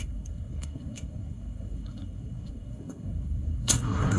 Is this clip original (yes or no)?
no